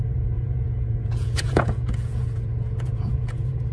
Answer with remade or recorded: remade